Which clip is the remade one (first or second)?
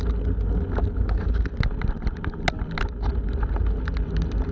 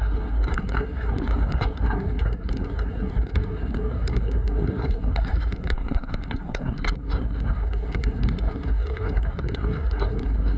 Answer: second